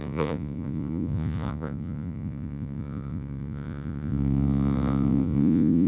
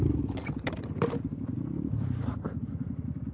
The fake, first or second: first